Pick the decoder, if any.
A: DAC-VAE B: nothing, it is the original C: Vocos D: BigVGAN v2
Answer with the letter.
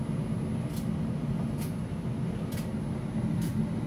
B